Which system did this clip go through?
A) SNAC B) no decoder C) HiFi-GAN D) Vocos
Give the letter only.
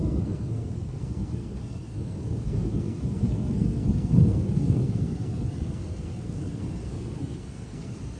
A